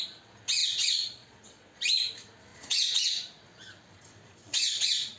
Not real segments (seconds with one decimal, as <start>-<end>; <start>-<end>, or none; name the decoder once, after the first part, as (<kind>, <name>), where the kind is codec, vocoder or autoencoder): 0.6-1.8 (vocoder, Vocos); 2.5-3.5; 4.4-5.2